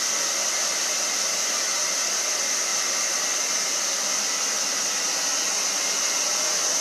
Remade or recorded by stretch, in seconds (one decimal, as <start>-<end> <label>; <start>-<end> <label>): 0.0-2.7 recorded; 2.7-3.5 remade; 3.5-6.8 recorded